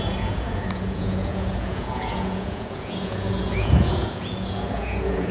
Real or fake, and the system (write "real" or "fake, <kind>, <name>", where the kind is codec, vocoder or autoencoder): fake, vocoder, Vocos